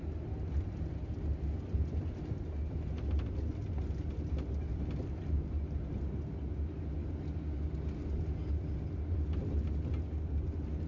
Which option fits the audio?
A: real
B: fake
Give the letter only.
A